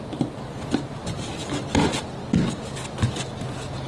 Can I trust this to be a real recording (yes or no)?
yes